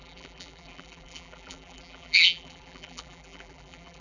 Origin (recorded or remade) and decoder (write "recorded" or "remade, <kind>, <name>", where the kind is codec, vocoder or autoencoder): remade, vocoder, BigVGAN v2